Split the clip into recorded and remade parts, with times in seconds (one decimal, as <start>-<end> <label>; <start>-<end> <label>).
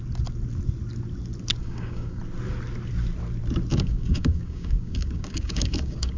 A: 0.0-1.6 recorded; 1.6-2.2 remade; 2.2-3.7 recorded; 3.7-6.2 remade